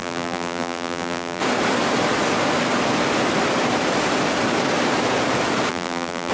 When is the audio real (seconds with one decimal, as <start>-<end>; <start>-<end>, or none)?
1.4-5.7